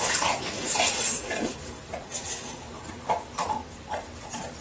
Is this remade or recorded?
recorded